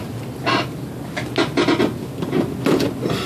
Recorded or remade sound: recorded